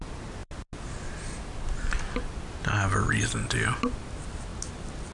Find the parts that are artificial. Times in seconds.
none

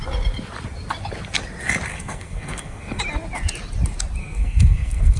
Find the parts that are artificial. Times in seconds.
1.9-3.0 (codec, SNAC); 4.2-5.2

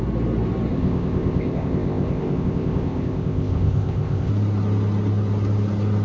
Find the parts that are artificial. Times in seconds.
0.7-4.3 (codec, ZipCodec)

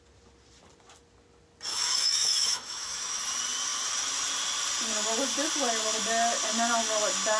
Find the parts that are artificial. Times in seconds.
1.7-3.2 (autoencoder, DAC-VAE)